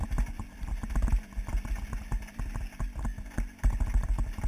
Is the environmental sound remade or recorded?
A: recorded